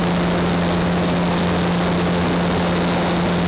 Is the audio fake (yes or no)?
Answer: no